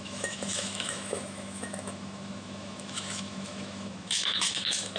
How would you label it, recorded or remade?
remade